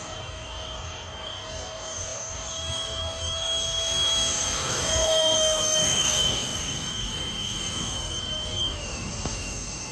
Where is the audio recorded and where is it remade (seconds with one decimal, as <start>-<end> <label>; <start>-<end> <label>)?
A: 0.0-9.9 remade